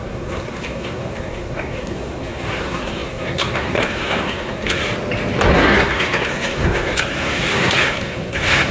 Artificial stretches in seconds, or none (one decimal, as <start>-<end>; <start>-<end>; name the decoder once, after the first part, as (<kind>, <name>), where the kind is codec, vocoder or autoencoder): 0.0-4.8 (codec, SNAC); 5.5-8.7